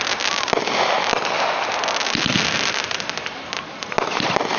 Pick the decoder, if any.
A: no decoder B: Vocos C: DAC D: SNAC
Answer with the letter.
A